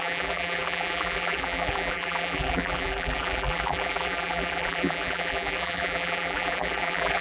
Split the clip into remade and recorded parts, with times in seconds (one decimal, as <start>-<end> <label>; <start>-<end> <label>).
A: 0.0-7.2 remade